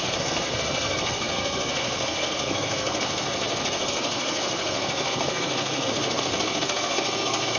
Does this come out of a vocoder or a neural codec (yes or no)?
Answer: yes